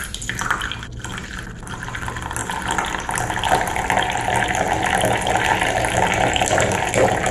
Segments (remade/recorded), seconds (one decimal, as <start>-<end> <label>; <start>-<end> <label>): 0.0-7.3 recorded